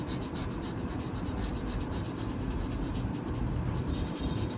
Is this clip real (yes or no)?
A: no